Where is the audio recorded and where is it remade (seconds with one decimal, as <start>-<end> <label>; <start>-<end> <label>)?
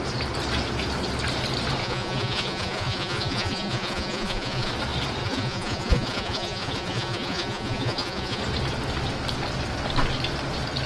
0.0-1.8 recorded; 1.8-4.7 remade; 4.7-5.2 recorded; 5.2-8.4 remade; 8.4-10.9 recorded